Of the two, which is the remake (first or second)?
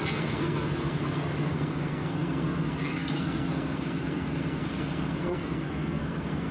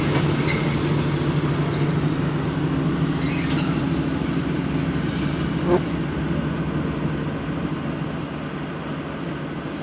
first